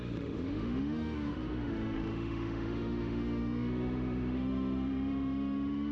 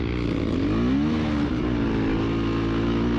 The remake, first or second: first